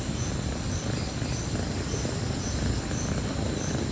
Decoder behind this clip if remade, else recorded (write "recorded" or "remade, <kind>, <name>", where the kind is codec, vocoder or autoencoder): recorded